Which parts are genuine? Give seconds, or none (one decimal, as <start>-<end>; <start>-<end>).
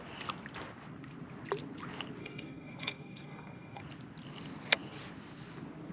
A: 0.0-2.2; 3.8-5.9